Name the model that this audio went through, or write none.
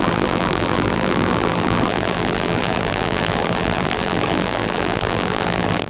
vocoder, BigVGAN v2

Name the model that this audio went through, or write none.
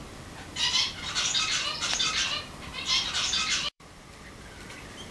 vocoder, BigVGAN v2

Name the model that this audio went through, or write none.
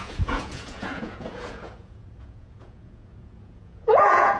vocoder, Vocos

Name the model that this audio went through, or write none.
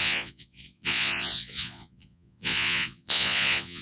vocoder, Vocos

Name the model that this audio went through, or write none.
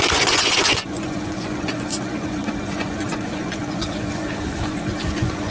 vocoder, Vocos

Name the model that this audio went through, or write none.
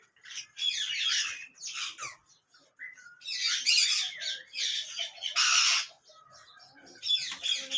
none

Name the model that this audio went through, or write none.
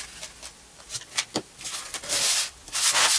vocoder, BigVGAN v2